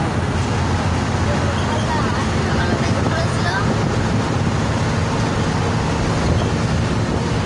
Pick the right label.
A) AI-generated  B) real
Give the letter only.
B